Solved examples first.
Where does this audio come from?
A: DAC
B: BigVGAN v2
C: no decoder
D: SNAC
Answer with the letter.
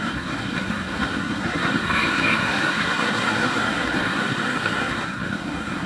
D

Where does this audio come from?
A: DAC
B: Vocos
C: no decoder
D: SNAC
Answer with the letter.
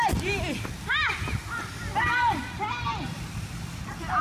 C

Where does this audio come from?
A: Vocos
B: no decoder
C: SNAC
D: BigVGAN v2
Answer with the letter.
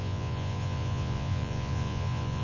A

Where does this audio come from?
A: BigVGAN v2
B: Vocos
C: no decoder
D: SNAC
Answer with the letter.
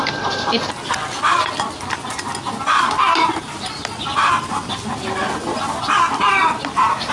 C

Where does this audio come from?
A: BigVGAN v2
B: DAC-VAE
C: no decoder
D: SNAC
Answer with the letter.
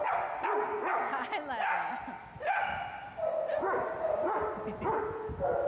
C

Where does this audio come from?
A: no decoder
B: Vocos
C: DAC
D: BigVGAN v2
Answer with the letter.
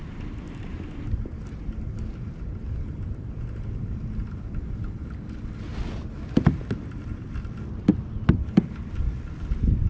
D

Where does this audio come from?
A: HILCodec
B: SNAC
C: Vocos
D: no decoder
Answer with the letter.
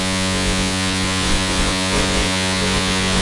C